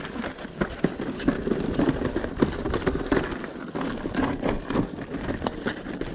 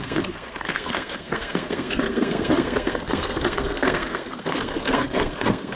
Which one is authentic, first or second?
first